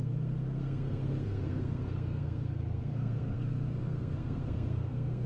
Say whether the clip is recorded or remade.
remade